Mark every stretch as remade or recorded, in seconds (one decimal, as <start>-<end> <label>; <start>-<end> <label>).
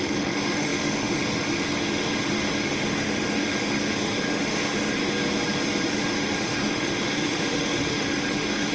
0.0-5.0 remade; 5.0-5.9 recorded; 5.9-8.7 remade